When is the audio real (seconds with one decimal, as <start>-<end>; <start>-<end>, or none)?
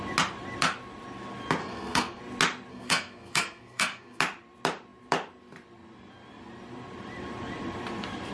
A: 0.0-1.6; 2.2-2.7; 4.2-8.3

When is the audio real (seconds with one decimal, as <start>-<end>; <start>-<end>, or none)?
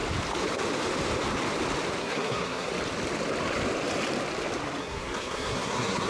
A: 0.0-2.0; 2.7-4.8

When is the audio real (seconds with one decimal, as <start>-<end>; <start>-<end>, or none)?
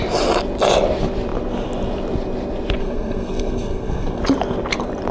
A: 0.0-2.8; 4.2-5.1